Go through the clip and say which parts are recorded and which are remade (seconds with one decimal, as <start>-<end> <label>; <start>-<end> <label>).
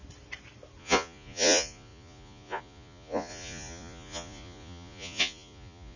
0.0-0.8 recorded; 0.8-6.0 remade